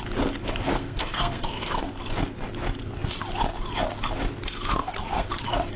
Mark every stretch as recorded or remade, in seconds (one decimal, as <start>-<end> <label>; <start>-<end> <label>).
0.0-0.6 recorded; 0.6-1.9 remade; 1.9-4.8 recorded; 4.8-5.3 remade; 5.3-5.8 recorded